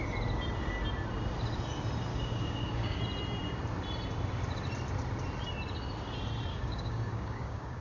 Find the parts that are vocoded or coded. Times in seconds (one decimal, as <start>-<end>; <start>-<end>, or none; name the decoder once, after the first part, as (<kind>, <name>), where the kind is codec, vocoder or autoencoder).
2.1-3.0 (codec, DAC); 6.5-7.8